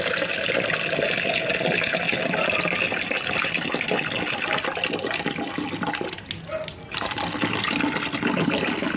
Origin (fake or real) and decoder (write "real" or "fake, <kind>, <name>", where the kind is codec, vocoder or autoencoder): real